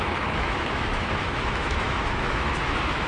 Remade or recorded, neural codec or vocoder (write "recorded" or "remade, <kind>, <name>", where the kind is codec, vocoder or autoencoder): remade, autoencoder, DAC-VAE